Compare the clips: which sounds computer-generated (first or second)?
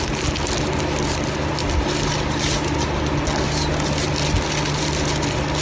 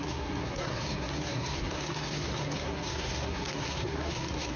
second